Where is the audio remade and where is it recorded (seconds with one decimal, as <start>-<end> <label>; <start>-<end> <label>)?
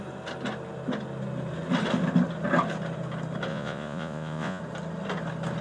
0.0-3.5 recorded; 3.5-4.6 remade; 4.6-5.6 recorded